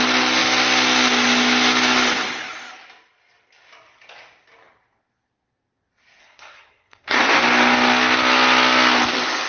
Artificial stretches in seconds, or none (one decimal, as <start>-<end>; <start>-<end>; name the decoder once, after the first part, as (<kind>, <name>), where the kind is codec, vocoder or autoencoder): 6.2-7.2 (codec, SNAC)